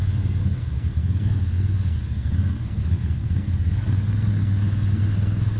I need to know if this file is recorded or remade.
remade